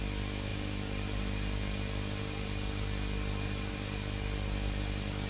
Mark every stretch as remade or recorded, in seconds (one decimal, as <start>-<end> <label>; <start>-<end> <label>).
0.0-5.3 recorded